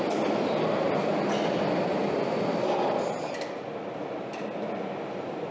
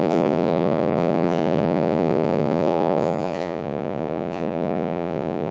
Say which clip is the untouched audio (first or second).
first